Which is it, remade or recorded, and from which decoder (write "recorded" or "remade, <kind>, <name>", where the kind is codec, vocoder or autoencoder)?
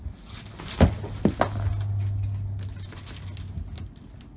recorded